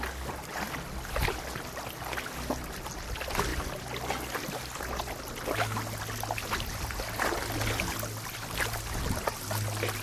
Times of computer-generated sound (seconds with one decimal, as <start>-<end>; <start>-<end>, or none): none